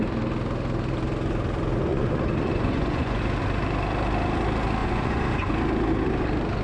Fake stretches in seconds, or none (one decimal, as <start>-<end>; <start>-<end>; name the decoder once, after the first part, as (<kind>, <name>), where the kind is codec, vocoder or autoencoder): 1.9-3.2 (vocoder, Vocos); 4.8-5.5